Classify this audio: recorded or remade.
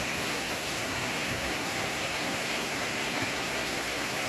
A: remade